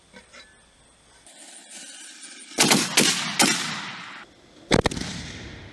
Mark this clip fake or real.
real